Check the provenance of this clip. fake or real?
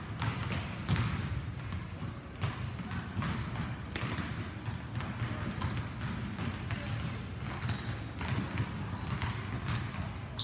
real